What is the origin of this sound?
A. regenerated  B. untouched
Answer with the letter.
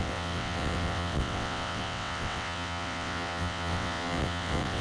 A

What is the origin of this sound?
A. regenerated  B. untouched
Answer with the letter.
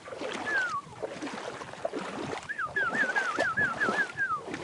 B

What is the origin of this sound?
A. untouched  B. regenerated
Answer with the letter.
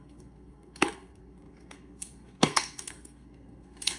B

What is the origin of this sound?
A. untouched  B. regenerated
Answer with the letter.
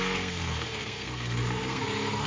B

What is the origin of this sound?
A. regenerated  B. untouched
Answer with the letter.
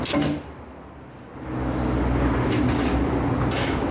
B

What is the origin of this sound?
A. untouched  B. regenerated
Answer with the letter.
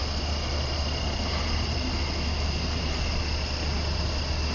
A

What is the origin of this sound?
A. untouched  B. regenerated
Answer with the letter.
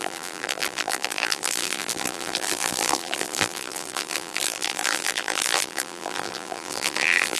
B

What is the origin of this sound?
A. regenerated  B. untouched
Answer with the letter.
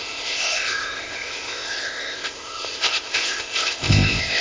A